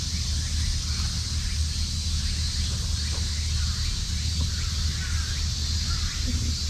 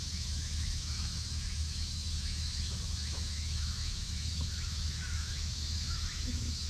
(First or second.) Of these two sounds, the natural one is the first